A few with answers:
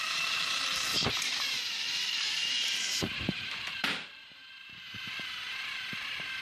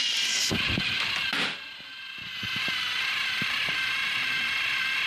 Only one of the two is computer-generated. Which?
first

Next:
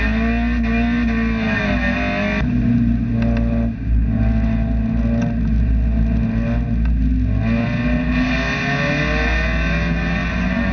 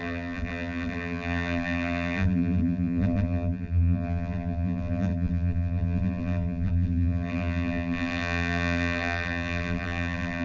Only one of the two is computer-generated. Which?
second